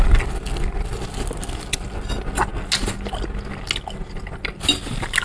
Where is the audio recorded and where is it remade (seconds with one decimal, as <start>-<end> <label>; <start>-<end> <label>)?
0.0-5.2 recorded

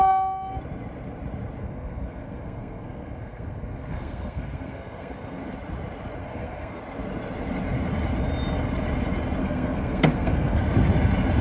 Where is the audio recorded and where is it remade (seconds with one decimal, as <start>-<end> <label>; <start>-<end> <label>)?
0.0-1.6 recorded; 1.6-5.4 remade; 5.4-6.2 recorded; 6.2-6.8 remade; 6.8-9.4 recorded; 9.4-10.6 remade; 10.6-11.4 recorded